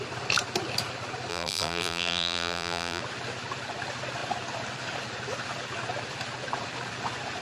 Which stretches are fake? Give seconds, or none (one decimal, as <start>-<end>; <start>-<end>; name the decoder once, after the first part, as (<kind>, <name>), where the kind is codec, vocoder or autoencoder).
1.3-3.0 (vocoder, BigVGAN v2)